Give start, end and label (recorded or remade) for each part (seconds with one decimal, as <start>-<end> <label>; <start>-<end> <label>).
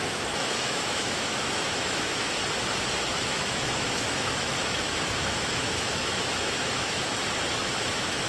0.0-2.4 remade; 2.4-3.2 recorded; 3.2-7.1 remade; 7.1-7.6 recorded; 7.6-8.3 remade